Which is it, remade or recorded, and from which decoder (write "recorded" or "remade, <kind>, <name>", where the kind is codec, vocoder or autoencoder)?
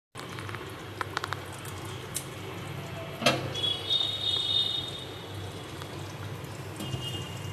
recorded